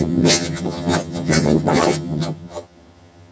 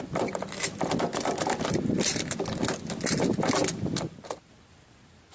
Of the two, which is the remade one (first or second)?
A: first